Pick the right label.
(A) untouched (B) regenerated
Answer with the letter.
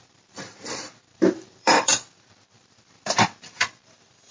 B